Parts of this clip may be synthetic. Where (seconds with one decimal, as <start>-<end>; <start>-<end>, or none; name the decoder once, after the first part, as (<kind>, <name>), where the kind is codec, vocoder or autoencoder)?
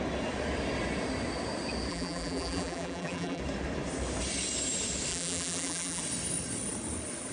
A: 1.9-3.4 (vocoder, BigVGAN v2); 5.1-6.0